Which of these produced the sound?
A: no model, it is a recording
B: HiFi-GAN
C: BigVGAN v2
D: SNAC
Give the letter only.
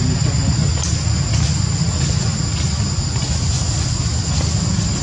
A